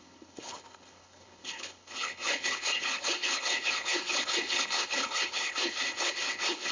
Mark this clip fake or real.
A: fake